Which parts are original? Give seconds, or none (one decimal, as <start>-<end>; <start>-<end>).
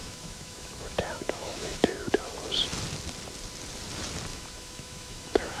2.2-4.3